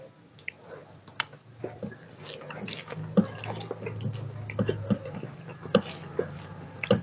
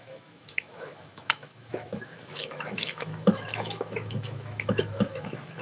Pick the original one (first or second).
first